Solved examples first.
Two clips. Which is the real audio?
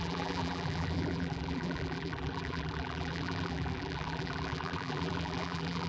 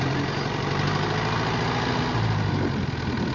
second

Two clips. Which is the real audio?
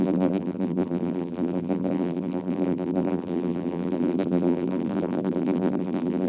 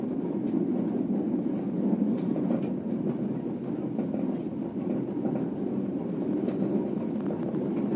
second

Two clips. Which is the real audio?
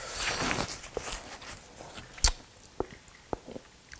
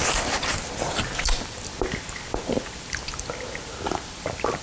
first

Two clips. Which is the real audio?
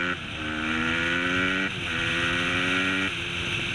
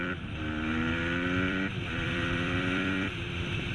first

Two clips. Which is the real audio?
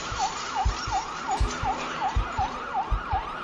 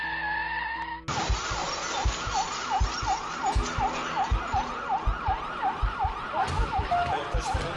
second